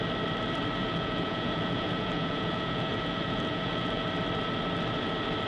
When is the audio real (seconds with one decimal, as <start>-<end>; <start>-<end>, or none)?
0.0-0.8; 4.1-5.5